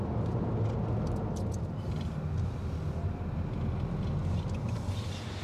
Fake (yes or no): no